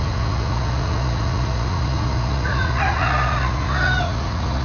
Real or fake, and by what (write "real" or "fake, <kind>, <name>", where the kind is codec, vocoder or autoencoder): fake, vocoder, Vocos